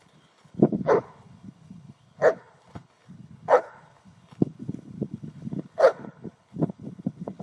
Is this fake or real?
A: fake